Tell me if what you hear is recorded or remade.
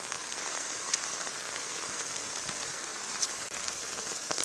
remade